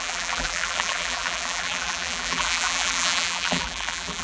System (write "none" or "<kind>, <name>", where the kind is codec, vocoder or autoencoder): vocoder, BigVGAN v2